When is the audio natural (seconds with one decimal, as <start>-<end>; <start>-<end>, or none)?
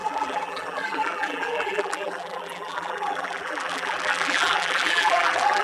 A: none